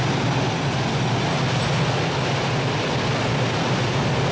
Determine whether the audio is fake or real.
real